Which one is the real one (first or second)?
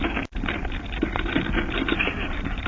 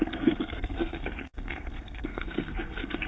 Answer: first